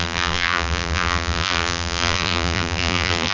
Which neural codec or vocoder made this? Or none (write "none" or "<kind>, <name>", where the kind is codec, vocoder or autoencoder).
vocoder, BigVGAN v2